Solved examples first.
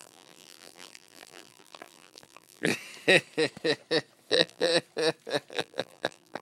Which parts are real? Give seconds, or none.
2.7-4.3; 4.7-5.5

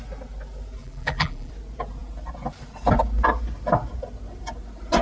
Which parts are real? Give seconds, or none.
0.0-0.8; 1.5-5.0

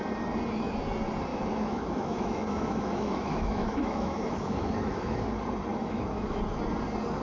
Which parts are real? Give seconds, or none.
0.0-1.3; 5.2-5.7; 6.4-7.2

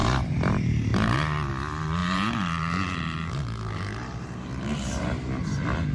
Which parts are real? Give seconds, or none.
0.0-0.9; 1.5-2.0; 5.3-5.9

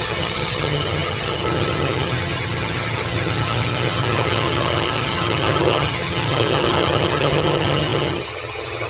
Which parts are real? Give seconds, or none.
none

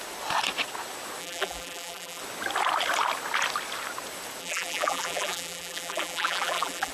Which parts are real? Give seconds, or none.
0.0-1.2; 2.2-4.4

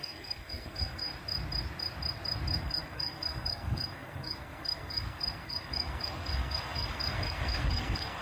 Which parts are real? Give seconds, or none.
1.1-2.6